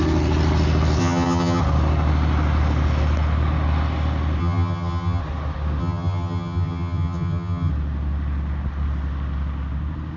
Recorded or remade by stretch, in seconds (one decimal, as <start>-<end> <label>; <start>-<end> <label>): 0.0-1.0 recorded; 1.0-1.6 remade; 1.6-4.4 recorded; 4.4-5.2 remade; 5.2-5.8 recorded; 5.8-7.7 remade; 7.7-10.2 recorded